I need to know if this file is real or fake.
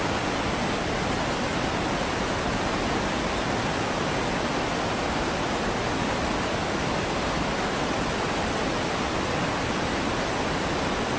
real